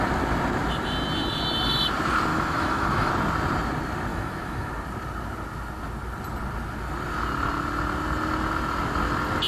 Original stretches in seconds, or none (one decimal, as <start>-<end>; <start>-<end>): 0.0-2.3; 3.1-4.1; 4.7-9.5